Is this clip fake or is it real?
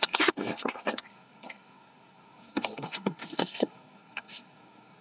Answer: fake